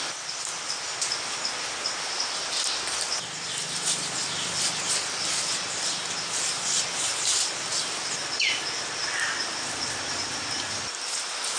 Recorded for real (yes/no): yes